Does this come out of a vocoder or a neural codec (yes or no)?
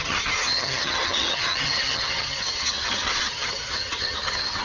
yes